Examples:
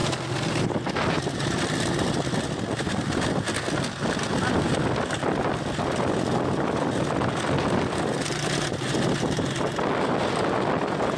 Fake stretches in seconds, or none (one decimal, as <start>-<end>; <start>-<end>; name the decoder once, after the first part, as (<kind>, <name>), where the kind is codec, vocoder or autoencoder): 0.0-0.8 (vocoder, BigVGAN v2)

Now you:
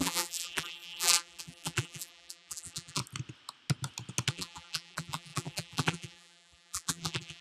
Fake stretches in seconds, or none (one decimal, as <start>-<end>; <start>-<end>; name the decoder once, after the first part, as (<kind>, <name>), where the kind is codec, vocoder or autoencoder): 0.0-3.0 (vocoder, BigVGAN v2); 4.3-7.4

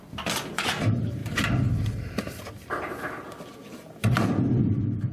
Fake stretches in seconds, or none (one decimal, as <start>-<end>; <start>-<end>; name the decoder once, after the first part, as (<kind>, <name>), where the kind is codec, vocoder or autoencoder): none

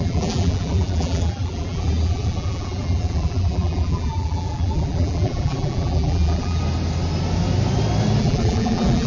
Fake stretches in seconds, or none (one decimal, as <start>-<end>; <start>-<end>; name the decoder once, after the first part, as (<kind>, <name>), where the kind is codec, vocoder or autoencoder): 0.0-6.6 (vocoder, BigVGAN v2); 8.2-9.1

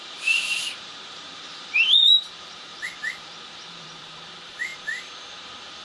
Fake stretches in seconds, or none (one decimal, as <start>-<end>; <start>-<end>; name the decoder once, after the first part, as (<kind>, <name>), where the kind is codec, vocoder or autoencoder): 0.0-5.8 (vocoder, BigVGAN v2)